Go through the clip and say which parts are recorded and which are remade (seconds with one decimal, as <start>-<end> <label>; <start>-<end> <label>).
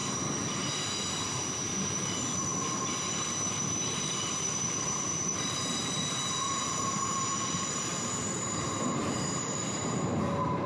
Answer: 0.0-1.9 recorded; 1.9-2.5 remade; 2.5-3.3 recorded; 3.3-10.7 remade